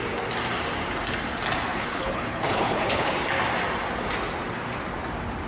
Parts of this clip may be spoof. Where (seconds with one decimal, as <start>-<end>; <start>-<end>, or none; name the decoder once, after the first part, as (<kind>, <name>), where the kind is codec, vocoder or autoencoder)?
1.7-3.1 (codec, HILCodec)